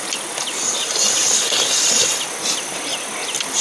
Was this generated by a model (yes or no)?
no